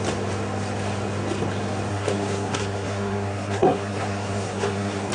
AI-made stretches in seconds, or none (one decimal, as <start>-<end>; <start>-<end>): 1.9-5.1

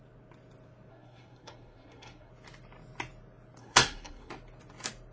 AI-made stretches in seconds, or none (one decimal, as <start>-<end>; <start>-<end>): 0.9-2.3; 3.6-4.3

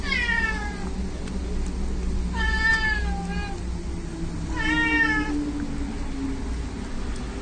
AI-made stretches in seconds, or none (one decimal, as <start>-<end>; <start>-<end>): none